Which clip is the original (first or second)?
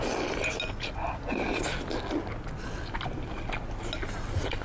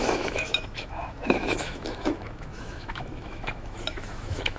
first